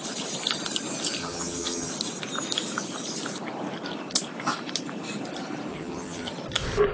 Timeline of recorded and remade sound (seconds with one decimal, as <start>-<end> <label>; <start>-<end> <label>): 0.0-1.2 recorded; 1.2-1.9 remade; 1.9-5.7 recorded; 5.7-6.3 remade; 6.3-6.9 recorded